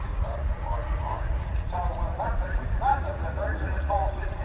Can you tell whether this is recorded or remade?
remade